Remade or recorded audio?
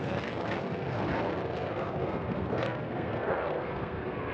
remade